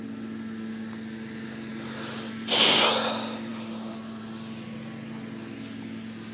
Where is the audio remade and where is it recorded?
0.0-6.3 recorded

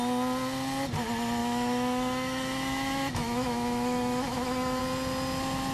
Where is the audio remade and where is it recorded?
0.0-1.4 recorded; 1.4-4.8 remade; 4.8-5.7 recorded